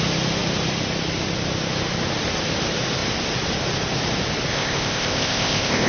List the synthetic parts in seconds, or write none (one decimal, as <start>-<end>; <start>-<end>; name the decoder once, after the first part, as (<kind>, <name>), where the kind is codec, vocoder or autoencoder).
4.5-5.9 (codec, ZipCodec)